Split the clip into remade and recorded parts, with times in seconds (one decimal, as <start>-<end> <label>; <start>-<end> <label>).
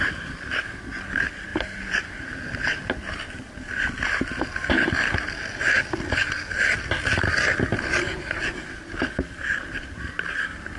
0.0-1.5 recorded; 1.5-4.4 remade; 4.4-10.8 recorded